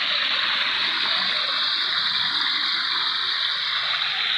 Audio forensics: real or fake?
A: real